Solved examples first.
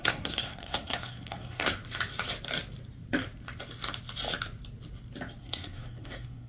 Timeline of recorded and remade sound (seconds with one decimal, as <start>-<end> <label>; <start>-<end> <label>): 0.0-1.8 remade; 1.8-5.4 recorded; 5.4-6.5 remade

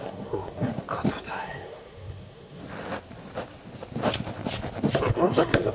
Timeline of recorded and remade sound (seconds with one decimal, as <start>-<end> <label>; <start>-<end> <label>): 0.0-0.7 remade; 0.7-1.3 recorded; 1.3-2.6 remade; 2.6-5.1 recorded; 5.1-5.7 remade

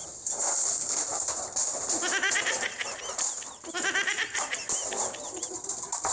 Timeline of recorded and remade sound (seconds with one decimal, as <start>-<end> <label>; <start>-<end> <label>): 0.0-6.1 recorded